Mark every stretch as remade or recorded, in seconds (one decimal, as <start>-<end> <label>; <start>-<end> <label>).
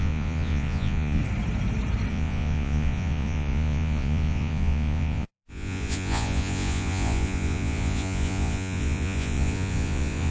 0.0-1.2 remade; 1.2-2.1 recorded; 2.1-10.3 remade